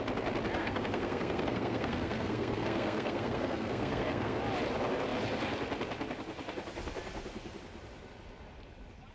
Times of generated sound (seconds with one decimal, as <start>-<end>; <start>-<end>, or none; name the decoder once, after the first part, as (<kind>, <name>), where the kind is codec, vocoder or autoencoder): 0.6-4.4 (codec, SNAC)